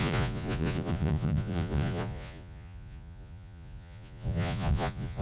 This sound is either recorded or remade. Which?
remade